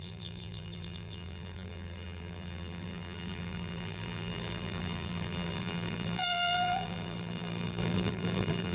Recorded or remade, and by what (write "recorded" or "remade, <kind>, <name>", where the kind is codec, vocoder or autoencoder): remade, vocoder, BigVGAN v2